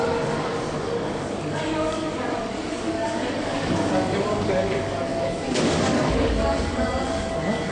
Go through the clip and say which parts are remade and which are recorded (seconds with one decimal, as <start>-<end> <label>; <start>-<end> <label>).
0.0-7.7 remade